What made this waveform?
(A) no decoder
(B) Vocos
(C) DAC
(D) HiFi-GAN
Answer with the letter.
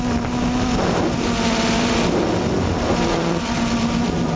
A